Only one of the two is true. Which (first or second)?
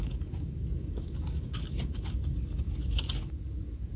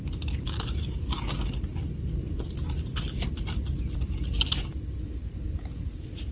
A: second